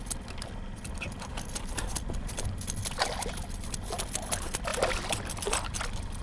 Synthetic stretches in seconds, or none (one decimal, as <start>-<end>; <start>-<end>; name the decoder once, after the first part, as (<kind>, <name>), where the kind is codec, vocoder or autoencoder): 1.3-2.2 (vocoder, BigVGAN v2)

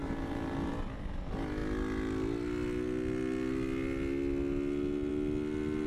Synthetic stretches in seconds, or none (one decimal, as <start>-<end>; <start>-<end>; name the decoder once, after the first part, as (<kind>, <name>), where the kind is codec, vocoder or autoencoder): 0.0-0.7 (vocoder, BigVGAN v2)

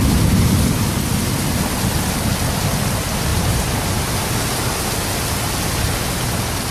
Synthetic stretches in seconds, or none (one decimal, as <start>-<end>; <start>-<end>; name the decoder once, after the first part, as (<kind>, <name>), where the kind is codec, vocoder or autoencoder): 3.3-4.0 (vocoder, BigVGAN v2)

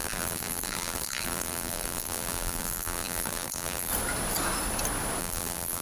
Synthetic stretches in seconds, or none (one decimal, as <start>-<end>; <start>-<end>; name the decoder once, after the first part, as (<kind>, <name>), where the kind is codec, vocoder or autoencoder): 0.0-3.9 (vocoder, BigVGAN v2); 5.2-5.8

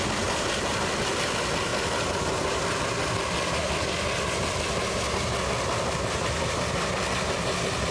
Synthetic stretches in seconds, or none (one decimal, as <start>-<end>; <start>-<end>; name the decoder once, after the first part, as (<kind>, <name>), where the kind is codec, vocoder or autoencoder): none

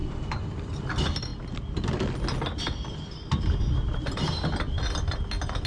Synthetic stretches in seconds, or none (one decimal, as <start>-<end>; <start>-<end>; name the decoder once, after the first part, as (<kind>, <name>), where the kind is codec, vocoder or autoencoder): 0.0-0.9 (vocoder, BigVGAN v2)

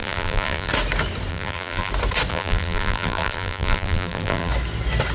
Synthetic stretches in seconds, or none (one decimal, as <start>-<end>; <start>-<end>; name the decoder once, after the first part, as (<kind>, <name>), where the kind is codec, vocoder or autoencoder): 0.0-0.7 (vocoder, BigVGAN v2); 1.3-1.9; 2.3-4.5

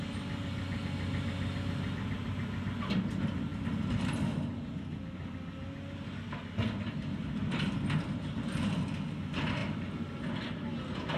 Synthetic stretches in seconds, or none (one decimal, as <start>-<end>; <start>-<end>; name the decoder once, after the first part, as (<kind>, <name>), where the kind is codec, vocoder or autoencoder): none